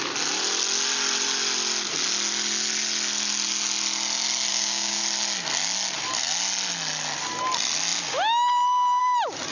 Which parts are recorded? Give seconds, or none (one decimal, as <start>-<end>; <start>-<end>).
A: 0.0-4.5; 5.0-9.5